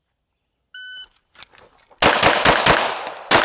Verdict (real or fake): real